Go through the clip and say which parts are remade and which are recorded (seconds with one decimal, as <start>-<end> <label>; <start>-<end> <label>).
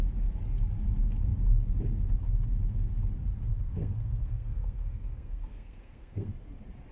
0.0-3.5 recorded; 3.5-6.3 remade; 6.3-6.9 recorded